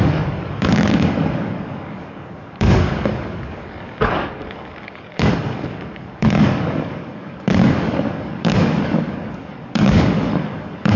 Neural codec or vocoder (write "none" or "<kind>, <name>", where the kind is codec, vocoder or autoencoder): codec, DAC